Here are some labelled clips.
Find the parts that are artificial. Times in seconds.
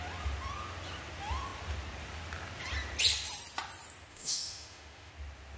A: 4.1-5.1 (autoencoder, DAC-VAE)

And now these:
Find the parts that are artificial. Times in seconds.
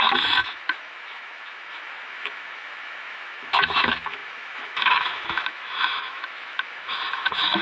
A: 0.0-7.6 (autoencoder, DAC-VAE)